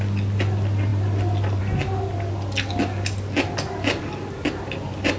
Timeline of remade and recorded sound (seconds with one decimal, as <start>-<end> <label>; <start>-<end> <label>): 0.0-5.2 recorded